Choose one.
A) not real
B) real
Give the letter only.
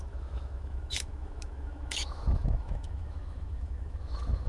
A